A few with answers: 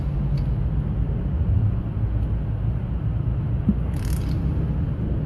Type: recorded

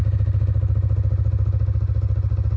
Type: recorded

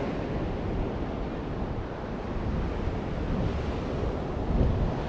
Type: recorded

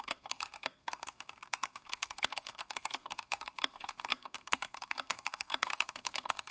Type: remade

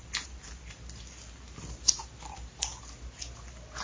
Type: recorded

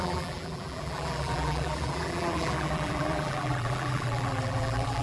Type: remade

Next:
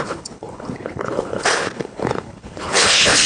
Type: remade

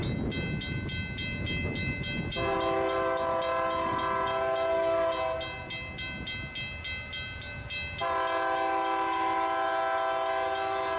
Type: recorded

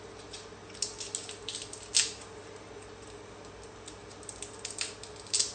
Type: recorded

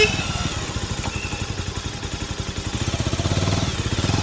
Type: recorded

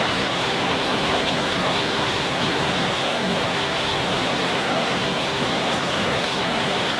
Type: remade